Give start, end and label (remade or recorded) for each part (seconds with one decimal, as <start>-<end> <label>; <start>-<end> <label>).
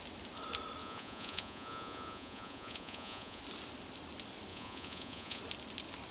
0.0-0.8 recorded; 0.8-3.4 remade; 3.4-4.5 recorded; 4.5-5.4 remade; 5.4-6.1 recorded